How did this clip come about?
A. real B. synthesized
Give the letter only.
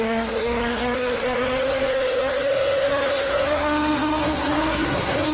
B